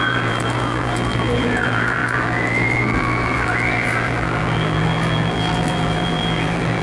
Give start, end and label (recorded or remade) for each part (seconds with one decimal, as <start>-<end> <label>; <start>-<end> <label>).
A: 0.0-6.8 remade